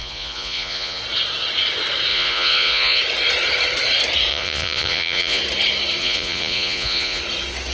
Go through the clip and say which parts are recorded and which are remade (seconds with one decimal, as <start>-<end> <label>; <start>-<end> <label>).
0.0-1.0 remade; 1.0-2.1 recorded; 2.1-3.0 remade; 3.0-4.3 recorded; 4.3-5.4 remade; 5.4-6.0 recorded; 6.0-7.2 remade; 7.2-7.7 recorded